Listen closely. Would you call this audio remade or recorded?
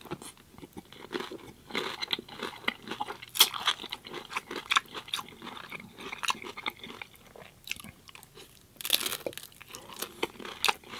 recorded